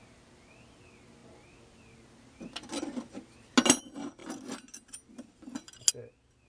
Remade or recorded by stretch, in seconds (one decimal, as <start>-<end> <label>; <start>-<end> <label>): 0.0-6.5 recorded